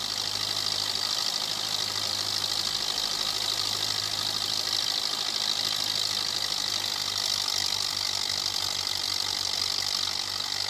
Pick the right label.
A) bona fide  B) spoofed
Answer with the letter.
A